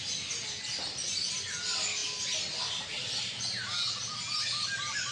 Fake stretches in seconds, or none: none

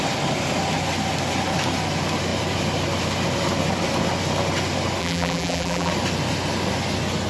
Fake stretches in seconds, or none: 5.0-5.9 (vocoder, BigVGAN v2)

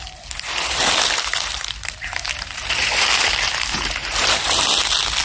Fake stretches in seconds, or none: 1.3-4.3 (vocoder, BigVGAN v2)

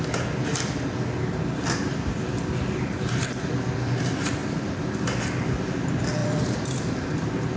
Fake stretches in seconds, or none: 6.2-7.6 (vocoder, BigVGAN v2)

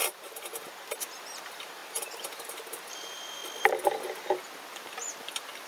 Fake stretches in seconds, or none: 0.0-3.4 (vocoder, BigVGAN v2); 4.8-5.7